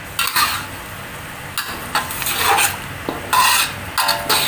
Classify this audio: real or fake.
real